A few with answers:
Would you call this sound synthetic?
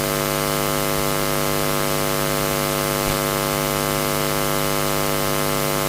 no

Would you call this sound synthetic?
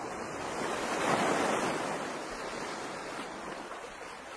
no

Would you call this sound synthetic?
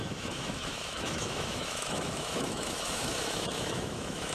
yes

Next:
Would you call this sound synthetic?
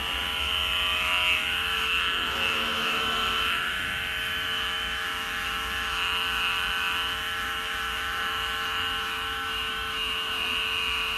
yes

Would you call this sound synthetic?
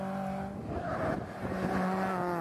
no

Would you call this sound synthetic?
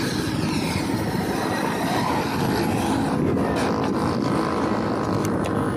no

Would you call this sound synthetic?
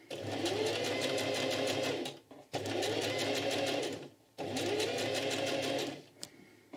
no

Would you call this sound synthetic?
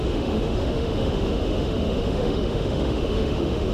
yes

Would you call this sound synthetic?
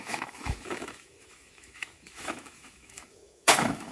yes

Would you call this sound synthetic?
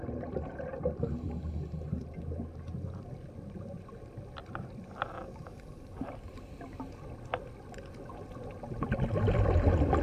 no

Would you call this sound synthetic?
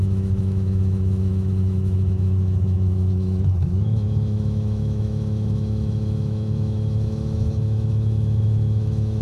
yes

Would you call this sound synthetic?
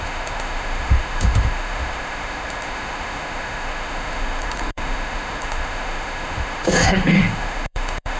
yes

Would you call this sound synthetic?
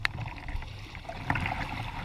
no